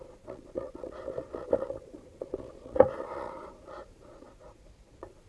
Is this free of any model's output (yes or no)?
no